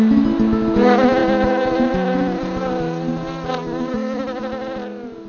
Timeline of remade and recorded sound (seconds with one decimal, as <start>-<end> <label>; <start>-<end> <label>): 0.0-5.3 recorded